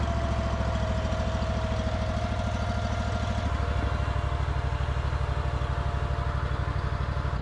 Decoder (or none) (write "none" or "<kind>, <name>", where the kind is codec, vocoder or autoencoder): none